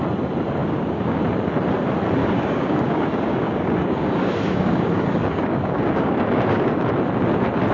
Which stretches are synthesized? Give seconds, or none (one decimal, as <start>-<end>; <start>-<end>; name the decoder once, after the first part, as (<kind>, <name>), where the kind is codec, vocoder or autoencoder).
0.6-1.2 (codec, DAC); 2.2-6.8